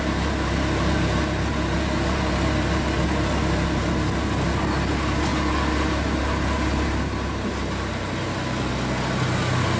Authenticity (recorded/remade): recorded